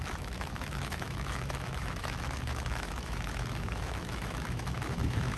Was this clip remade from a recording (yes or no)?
yes